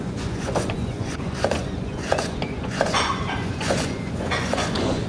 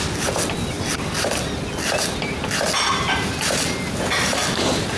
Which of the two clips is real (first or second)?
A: second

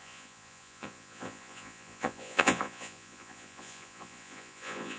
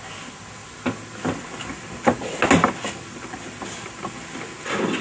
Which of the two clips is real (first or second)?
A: second